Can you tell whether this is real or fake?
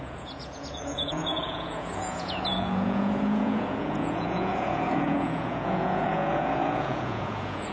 fake